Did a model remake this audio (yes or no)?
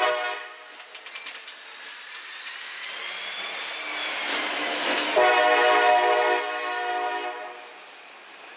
no